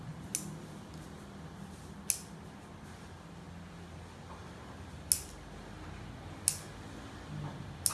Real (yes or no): yes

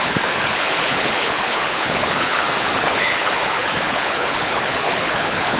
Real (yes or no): no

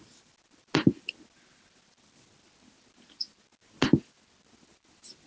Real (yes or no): yes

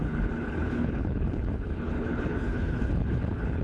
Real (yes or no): no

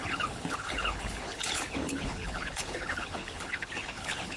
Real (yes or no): no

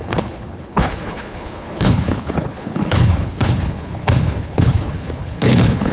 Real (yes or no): no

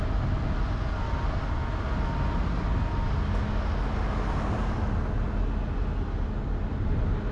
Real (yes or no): yes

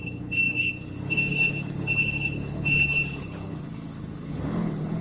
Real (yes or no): no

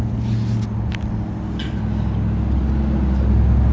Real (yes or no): yes